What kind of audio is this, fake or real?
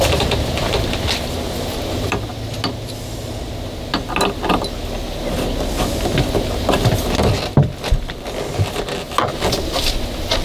real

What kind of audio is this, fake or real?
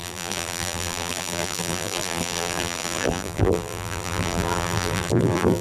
fake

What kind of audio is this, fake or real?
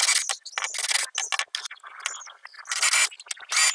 real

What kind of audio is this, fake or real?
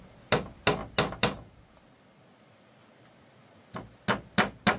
real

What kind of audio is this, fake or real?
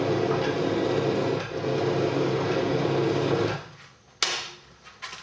real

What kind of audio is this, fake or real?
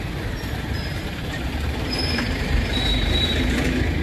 fake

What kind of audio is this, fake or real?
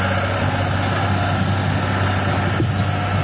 real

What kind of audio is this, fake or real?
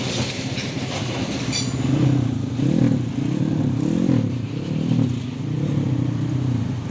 real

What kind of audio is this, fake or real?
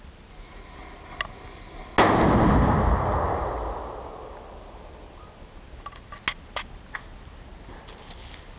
real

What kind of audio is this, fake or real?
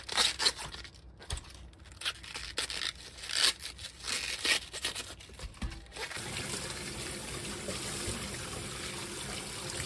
real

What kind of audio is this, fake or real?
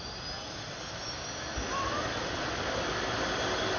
fake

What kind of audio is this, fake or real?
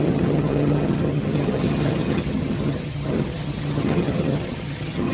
fake